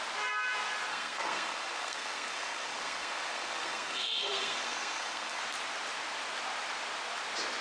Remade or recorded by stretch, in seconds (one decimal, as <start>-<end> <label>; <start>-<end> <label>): 0.0-0.9 recorded; 0.9-5.4 remade; 5.4-7.6 recorded